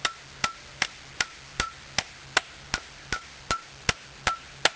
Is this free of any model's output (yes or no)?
yes